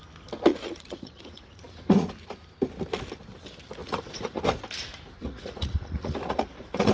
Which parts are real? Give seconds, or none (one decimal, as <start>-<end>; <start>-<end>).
0.0-0.5; 2.1-3.8; 4.4-5.2